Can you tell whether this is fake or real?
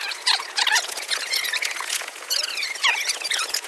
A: fake